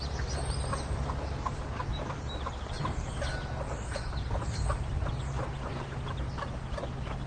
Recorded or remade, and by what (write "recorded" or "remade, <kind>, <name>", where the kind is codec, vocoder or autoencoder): recorded